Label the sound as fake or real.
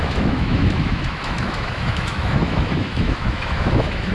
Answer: fake